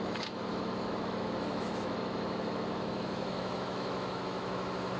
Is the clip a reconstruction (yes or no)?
yes